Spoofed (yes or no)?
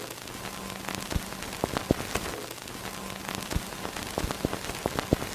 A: no